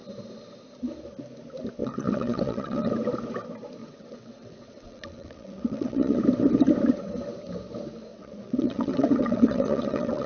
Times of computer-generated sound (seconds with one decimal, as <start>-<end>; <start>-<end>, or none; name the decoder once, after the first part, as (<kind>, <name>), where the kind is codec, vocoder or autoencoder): 1.8-2.9 (vocoder, WaveNeXt); 3.8-6.2; 8.1-10.3